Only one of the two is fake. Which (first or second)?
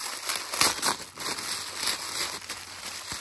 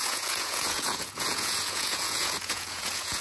second